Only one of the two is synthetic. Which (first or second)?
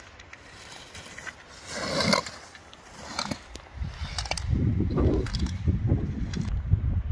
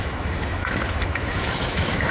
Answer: second